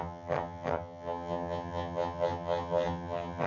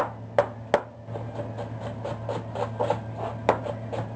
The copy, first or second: first